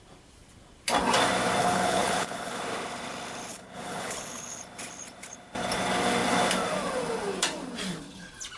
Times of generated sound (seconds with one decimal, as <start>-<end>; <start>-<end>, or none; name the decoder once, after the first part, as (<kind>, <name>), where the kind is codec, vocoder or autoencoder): 1.6-2.6 (codec, HILCodec); 3.5-4.6